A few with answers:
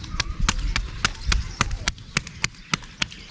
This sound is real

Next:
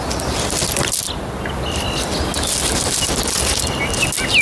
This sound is real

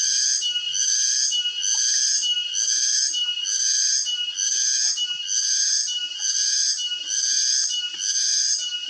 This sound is real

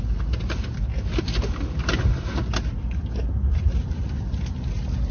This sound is real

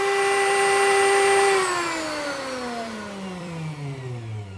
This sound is fake